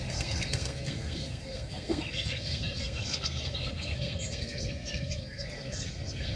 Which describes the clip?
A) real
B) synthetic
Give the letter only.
B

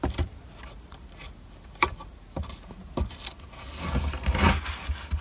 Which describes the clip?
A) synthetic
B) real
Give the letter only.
B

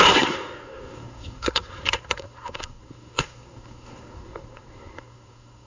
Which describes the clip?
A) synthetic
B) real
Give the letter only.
A